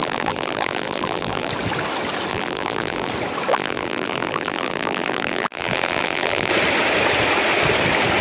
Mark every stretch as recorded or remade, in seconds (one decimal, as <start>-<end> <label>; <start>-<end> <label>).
0.0-1.5 remade; 1.5-2.3 recorded; 2.3-3.1 remade; 3.1-3.5 recorded; 3.5-6.5 remade; 6.5-8.2 recorded